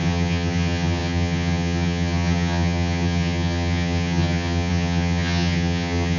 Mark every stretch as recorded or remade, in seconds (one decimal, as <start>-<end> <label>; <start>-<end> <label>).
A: 0.0-6.2 remade